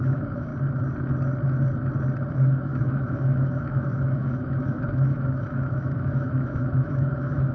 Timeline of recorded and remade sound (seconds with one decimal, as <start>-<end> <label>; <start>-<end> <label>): 0.0-0.5 remade; 0.5-2.3 recorded; 2.3-7.5 remade